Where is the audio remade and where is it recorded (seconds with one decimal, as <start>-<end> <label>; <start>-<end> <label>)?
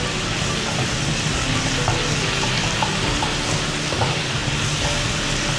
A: 0.0-5.6 recorded